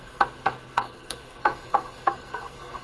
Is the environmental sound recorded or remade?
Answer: remade